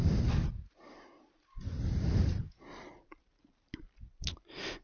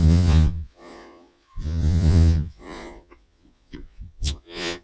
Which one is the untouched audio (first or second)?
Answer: first